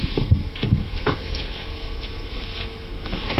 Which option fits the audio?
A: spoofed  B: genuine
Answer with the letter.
A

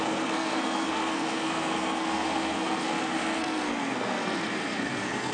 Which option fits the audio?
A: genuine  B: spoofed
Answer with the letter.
B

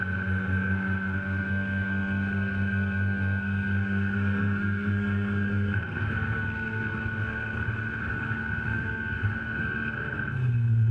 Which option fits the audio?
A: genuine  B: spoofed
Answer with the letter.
B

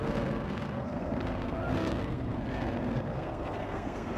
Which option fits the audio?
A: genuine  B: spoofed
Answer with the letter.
B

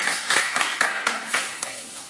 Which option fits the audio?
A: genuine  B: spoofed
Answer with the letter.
B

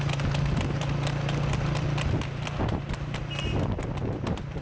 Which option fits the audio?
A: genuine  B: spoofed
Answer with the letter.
A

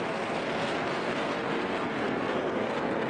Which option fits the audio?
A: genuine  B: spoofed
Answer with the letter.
B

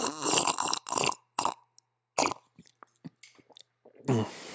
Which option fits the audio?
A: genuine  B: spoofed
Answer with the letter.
A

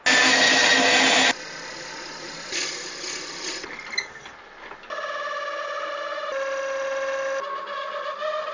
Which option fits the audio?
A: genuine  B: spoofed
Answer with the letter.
A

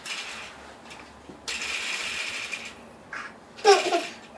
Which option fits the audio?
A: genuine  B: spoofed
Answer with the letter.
A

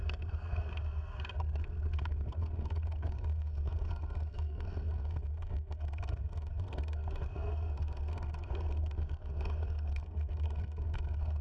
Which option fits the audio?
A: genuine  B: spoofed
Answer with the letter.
B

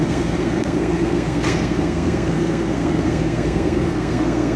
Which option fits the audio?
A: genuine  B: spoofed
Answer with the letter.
B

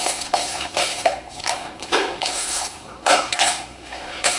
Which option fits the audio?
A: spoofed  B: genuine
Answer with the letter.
A